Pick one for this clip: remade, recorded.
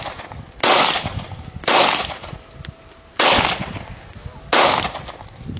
recorded